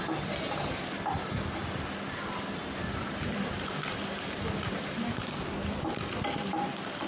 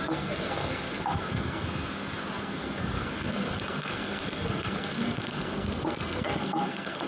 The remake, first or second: second